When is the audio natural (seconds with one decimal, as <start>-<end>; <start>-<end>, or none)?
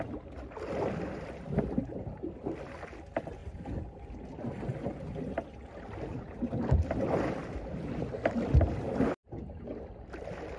0.0-10.6